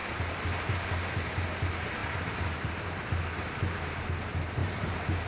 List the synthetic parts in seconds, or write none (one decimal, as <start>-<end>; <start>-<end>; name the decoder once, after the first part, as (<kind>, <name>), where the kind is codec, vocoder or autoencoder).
0.0-1.3 (vocoder, BigVGAN v2); 2.0-2.7; 4.6-5.3